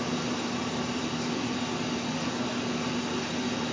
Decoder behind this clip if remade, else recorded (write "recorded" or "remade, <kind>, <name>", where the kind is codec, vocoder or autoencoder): recorded